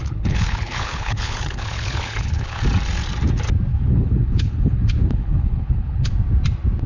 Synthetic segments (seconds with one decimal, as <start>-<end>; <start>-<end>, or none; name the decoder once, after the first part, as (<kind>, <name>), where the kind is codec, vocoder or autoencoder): 0.0-2.6 (codec, HILCodec); 3.7-6.1